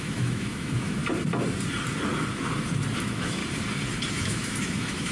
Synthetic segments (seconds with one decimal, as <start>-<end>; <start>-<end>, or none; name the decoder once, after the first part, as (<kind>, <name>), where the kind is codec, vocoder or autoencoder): 0.0-1.0 (autoencoder, DAC-VAE); 3.0-3.4; 4.1-5.1